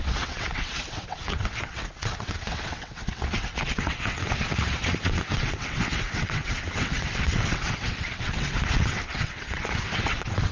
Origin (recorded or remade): remade